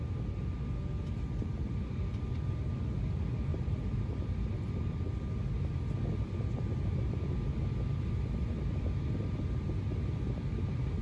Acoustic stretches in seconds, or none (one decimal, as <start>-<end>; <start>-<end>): 0.0-3.5; 5.0-11.0